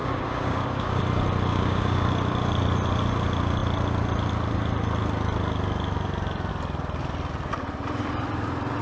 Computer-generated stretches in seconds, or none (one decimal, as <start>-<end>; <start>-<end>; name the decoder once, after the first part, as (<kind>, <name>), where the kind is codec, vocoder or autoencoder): 0.0-1.0 (codec, DAC); 1.5-2.1